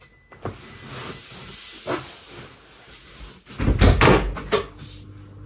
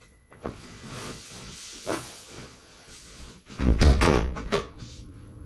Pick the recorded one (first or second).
first